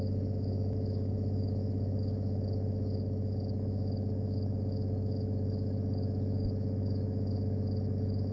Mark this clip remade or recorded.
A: remade